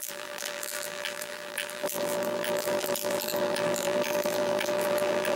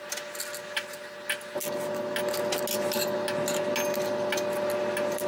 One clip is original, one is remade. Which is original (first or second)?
second